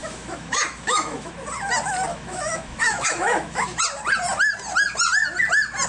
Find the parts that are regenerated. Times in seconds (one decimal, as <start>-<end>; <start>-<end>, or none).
0.0-1.3; 2.1-3.8